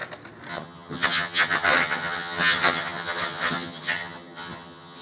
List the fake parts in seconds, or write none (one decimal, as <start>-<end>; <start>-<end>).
0.5-5.0